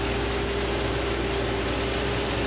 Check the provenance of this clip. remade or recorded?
recorded